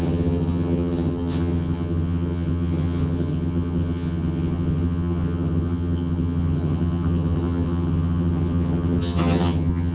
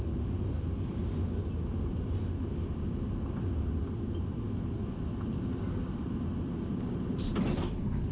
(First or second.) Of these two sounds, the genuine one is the second